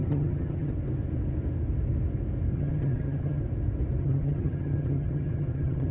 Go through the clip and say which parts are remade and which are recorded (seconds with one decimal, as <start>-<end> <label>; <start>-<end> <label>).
0.0-0.7 remade; 0.7-2.5 recorded; 2.5-3.4 remade; 3.4-4.0 recorded; 4.0-5.9 remade